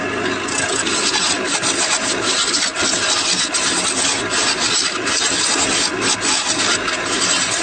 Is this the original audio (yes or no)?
yes